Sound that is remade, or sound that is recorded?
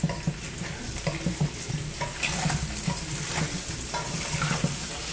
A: recorded